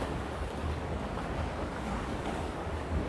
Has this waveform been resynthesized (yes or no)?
yes